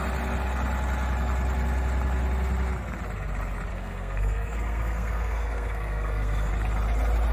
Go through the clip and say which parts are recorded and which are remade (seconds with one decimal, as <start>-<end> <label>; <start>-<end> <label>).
0.0-3.7 recorded; 3.7-6.5 remade; 6.5-7.3 recorded

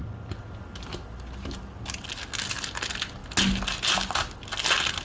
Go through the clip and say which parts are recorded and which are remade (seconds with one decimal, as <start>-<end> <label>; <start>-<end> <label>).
0.0-5.0 recorded

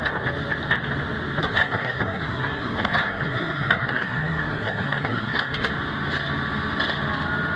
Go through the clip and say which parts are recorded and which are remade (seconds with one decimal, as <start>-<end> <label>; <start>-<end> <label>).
0.0-1.4 recorded; 1.4-5.7 remade; 5.7-7.6 recorded

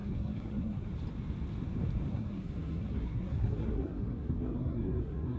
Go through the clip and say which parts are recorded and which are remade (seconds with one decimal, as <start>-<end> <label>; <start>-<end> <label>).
0.0-0.9 remade; 0.9-2.1 recorded; 2.1-5.4 remade

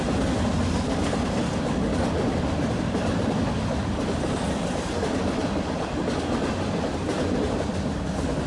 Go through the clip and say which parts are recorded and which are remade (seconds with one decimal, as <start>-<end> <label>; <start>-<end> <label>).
0.0-8.5 recorded

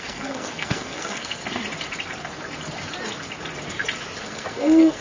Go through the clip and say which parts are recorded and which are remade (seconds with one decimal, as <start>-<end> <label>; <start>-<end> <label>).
0.0-1.4 remade; 1.4-4.2 recorded; 4.2-5.0 remade

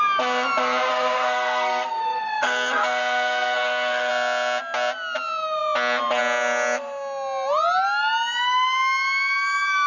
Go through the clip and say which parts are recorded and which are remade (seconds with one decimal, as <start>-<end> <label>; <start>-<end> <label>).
0.0-0.9 recorded; 0.9-4.1 remade; 4.1-9.9 recorded

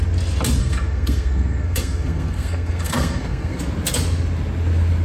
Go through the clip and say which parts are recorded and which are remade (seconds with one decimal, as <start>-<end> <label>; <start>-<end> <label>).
0.0-0.6 recorded; 0.6-3.6 remade; 3.6-5.0 recorded